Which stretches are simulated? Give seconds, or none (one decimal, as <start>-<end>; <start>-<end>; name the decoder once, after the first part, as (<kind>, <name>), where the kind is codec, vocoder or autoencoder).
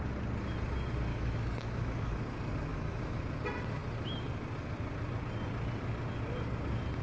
1.1-2.2 (autoencoder, DAC-VAE); 2.7-3.2